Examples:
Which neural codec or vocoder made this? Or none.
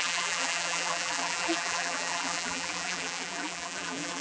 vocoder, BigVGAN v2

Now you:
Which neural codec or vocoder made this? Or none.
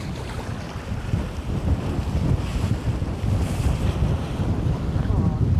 none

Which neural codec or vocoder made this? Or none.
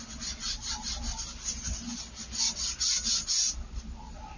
none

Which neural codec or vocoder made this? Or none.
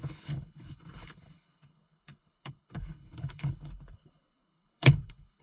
codec, HILCodec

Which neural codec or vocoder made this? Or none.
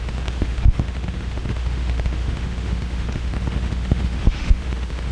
autoencoder, DAC-VAE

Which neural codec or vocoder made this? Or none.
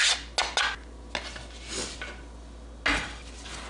none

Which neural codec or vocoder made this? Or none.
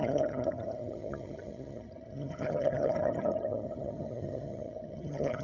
vocoder, HiFi-GAN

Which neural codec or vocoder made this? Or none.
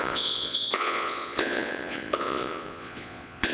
vocoder, Vocos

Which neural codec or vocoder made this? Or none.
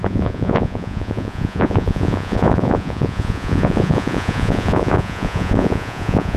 vocoder, Vocos